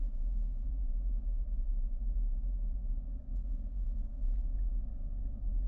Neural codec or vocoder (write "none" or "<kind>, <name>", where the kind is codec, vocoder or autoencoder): vocoder, Vocos